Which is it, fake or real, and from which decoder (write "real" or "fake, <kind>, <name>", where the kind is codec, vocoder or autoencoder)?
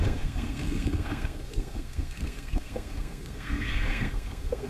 fake, codec, SNAC